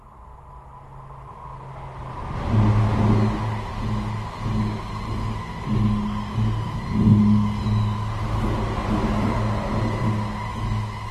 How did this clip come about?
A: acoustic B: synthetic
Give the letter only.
A